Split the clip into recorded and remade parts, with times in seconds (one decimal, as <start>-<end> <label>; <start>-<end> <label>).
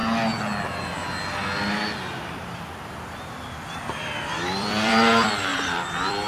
0.0-3.8 recorded; 3.8-6.3 remade